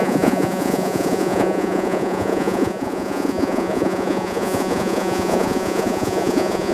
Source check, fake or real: fake